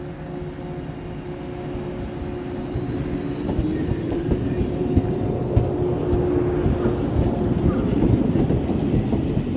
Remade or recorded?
recorded